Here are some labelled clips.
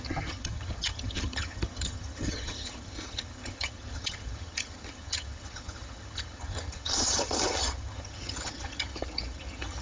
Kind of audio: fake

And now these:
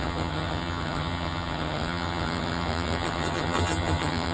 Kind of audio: fake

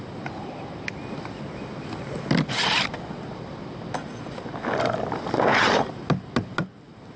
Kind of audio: real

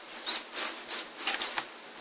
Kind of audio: real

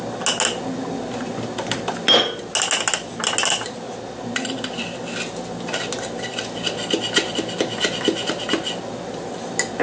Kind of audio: real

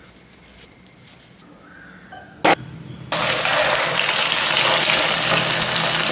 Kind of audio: real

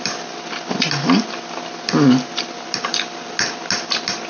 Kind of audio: real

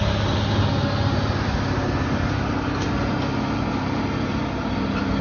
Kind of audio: real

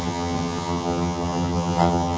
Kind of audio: fake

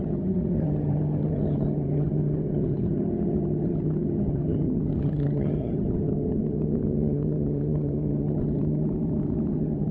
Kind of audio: fake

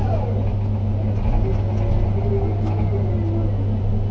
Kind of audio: real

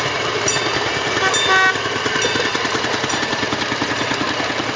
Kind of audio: real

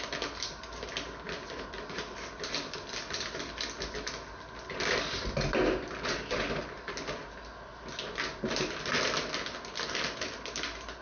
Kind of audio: real